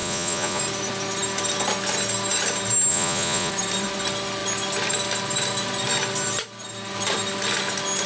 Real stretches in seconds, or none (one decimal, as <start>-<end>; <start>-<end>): 0.6-2.9; 3.5-8.1